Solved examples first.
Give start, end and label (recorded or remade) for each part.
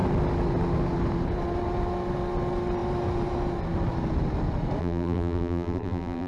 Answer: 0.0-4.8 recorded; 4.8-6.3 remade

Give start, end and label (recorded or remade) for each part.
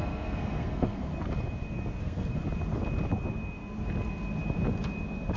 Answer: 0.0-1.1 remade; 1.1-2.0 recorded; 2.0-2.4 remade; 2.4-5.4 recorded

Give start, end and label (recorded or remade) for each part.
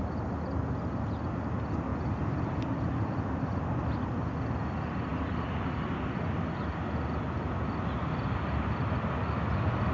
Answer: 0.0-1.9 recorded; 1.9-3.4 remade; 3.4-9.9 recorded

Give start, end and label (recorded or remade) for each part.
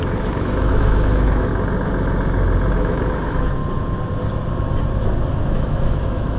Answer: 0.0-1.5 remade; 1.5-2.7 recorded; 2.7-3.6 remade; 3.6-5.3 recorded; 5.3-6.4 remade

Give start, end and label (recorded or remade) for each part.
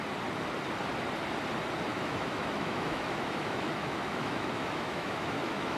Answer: 0.0-1.9 recorded; 1.9-5.8 remade